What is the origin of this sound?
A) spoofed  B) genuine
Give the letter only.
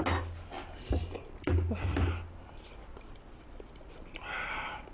B